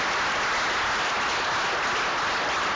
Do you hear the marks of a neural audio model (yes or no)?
no